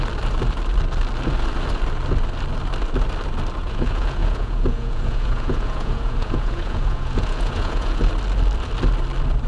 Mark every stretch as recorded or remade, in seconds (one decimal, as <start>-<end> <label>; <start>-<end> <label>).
0.0-3.6 recorded; 3.6-8.1 remade; 8.1-9.5 recorded